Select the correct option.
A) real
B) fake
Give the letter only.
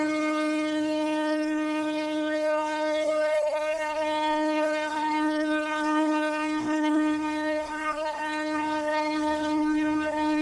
B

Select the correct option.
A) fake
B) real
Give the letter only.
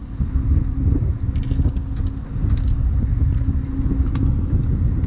B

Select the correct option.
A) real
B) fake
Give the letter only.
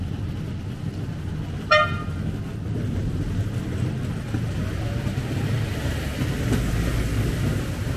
A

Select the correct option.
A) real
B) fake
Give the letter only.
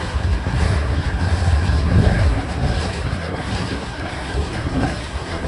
B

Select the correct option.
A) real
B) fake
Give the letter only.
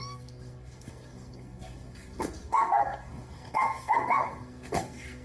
B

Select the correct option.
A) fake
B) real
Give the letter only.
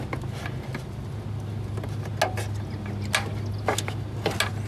B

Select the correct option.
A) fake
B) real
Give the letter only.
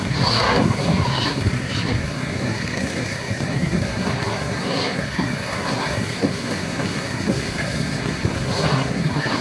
A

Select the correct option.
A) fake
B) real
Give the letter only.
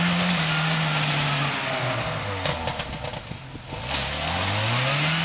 B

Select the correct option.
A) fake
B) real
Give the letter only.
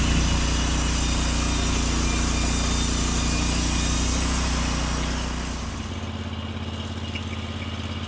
B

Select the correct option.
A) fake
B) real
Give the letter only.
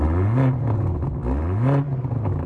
B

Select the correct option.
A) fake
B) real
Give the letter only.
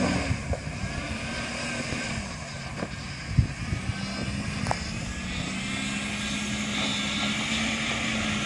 B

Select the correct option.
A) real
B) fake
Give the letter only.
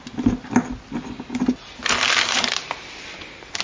A